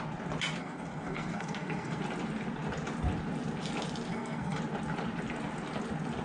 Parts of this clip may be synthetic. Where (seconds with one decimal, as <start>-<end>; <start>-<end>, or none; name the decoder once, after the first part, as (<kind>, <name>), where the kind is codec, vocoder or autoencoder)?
0.6-2.0 (codec, SNAC); 4.1-4.6